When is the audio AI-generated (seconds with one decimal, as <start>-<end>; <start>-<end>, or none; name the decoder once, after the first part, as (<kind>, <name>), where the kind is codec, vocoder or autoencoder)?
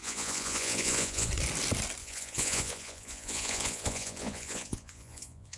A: 0.0-1.3 (vocoder, Vocos); 2.0-5.6